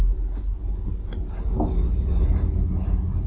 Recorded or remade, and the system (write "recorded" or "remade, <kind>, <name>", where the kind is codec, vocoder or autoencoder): recorded